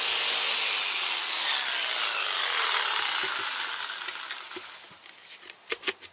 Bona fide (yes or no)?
yes